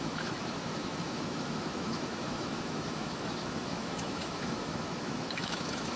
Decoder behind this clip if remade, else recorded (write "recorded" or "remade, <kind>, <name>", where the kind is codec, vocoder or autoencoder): remade, autoencoder, DAC-VAE